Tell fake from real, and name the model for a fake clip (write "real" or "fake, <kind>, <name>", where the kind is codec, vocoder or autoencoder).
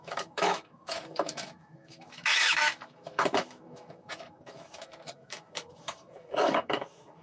fake, autoencoder, DAC-VAE